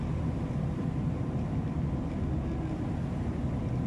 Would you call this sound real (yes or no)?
yes